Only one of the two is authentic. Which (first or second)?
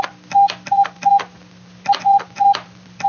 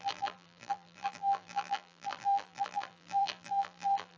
first